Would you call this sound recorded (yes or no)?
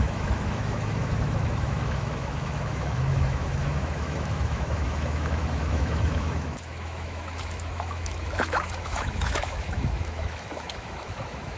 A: no